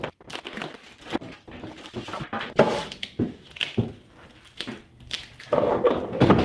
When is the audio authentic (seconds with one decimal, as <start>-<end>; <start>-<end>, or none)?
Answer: 0.7-4.5

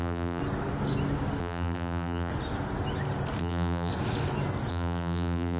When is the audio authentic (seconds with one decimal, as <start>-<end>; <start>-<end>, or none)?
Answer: 0.4-1.4; 2.3-3.4; 3.9-4.7

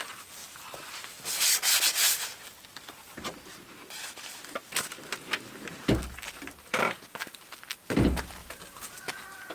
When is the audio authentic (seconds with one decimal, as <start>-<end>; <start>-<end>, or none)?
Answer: 0.0-6.7; 7.3-8.4

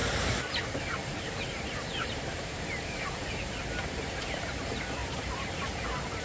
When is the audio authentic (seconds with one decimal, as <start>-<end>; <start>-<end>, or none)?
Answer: 0.5-1.1; 3.6-5.0; 5.8-6.2